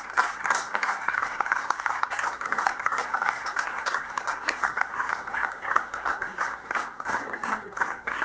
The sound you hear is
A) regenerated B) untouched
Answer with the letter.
A